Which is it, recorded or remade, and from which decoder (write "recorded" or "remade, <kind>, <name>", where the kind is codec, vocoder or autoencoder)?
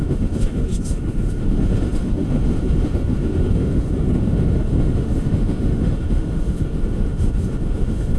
remade, autoencoder, DAC-VAE